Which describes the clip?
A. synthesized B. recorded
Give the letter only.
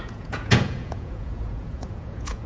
A